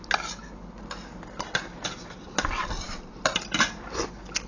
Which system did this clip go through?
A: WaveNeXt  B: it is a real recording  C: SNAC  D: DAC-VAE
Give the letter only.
B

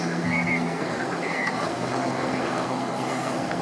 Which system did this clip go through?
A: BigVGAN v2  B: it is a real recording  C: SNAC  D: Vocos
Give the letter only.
C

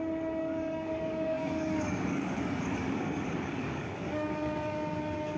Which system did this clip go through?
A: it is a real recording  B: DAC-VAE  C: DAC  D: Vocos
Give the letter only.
C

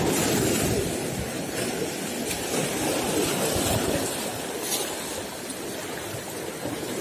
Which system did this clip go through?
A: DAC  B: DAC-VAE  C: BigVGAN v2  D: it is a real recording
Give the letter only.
D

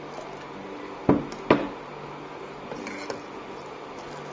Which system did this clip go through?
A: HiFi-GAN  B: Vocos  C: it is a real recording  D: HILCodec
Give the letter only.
C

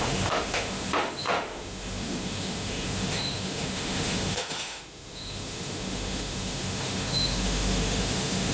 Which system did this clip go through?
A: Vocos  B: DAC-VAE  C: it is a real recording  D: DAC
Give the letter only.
B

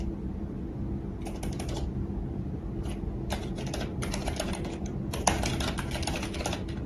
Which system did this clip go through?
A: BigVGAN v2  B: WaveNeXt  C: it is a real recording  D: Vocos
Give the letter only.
C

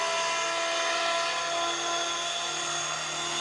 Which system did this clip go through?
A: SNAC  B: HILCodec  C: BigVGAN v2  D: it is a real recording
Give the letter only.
D